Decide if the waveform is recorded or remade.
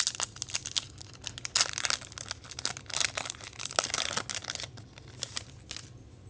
recorded